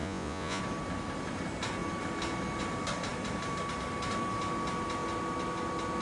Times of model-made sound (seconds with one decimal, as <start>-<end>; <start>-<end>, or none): 0.0-0.6